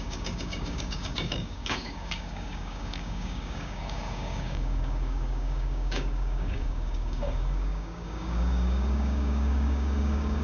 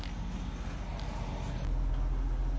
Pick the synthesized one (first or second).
first